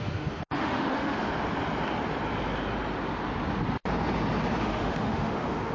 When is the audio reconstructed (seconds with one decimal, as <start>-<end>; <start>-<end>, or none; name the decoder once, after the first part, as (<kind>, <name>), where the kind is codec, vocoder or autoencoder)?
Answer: 0.0-1.2 (autoencoder, DAC-VAE); 4.6-5.7